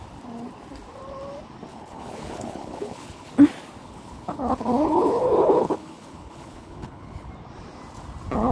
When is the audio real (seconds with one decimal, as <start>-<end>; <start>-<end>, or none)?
0.0-1.7; 3.3-3.8; 7.3-8.5